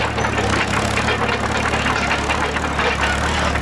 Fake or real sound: real